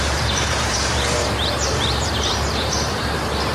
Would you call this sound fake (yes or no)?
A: yes